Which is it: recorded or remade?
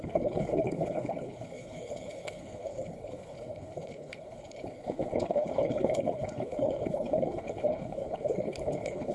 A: remade